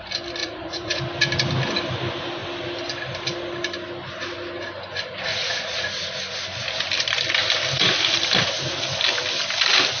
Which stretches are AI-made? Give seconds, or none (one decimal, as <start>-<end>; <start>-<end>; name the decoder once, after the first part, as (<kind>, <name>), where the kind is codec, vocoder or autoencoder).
0.4-1.0 (vocoder, Vocos); 5.3-6.1